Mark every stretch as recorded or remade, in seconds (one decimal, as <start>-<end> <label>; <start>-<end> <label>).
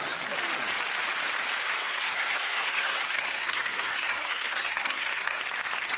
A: 0.0-1.8 recorded; 1.8-5.4 remade; 5.4-6.0 recorded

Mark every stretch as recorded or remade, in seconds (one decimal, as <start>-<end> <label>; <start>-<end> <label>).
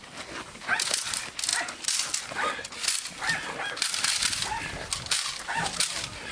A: 0.0-6.3 recorded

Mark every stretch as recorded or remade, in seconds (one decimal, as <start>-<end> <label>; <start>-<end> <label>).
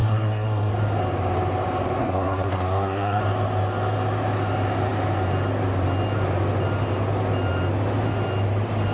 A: 0.0-0.7 remade; 0.7-2.0 recorded; 2.0-3.2 remade; 3.2-8.9 recorded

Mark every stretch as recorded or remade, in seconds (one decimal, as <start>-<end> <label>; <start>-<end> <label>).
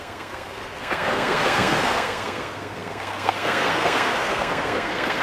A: 0.0-5.2 remade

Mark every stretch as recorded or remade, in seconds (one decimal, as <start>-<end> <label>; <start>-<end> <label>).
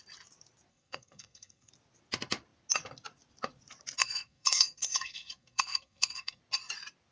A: 0.0-0.7 recorded; 0.7-1.7 remade; 1.7-4.0 recorded; 4.0-6.4 remade; 6.4-7.1 recorded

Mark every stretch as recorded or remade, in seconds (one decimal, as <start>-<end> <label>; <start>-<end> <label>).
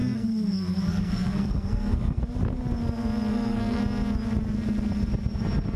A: 0.0-2.2 remade; 2.2-3.3 recorded; 3.3-3.8 remade; 3.8-5.8 recorded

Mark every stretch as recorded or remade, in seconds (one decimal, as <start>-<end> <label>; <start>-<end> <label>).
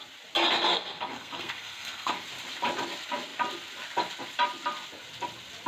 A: 0.0-0.7 recorded; 0.7-2.1 remade; 2.1-5.7 recorded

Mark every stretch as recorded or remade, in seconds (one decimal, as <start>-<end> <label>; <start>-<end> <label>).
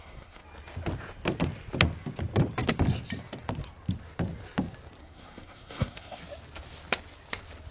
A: 0.0-0.4 remade; 0.4-5.0 recorded; 5.0-6.2 remade; 6.2-7.7 recorded